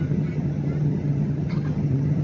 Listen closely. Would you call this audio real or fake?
fake